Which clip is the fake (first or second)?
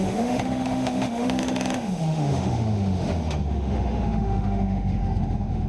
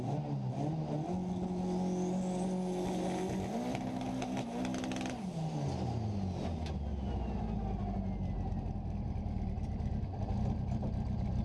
first